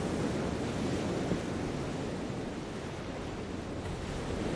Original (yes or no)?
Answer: yes